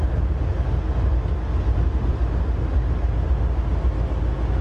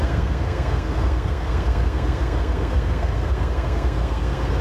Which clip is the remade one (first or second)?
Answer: second